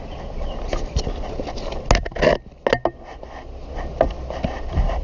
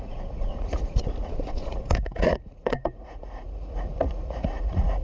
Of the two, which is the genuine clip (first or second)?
first